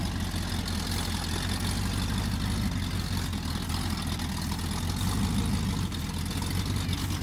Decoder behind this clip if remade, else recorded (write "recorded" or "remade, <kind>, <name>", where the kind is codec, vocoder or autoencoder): recorded